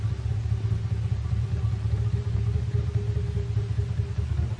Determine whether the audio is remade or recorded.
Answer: recorded